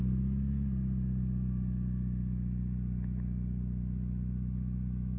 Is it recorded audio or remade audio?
recorded